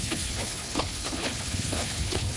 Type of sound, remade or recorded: remade